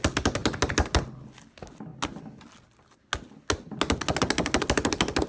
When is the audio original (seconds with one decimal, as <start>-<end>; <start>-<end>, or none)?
0.0-5.3